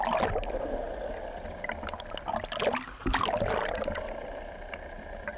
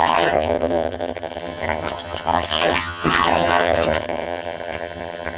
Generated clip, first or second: second